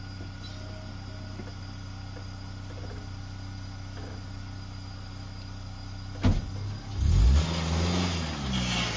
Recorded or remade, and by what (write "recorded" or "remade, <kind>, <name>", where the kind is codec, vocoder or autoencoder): recorded